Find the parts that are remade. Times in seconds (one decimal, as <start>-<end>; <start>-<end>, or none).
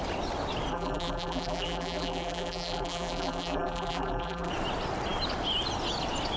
0.7-4.5